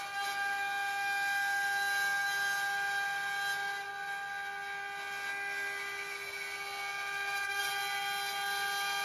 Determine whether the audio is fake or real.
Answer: real